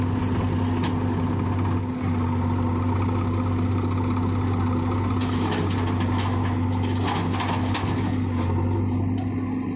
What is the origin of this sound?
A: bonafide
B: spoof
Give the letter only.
A